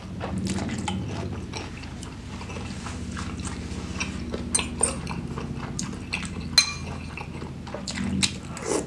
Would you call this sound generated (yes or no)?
no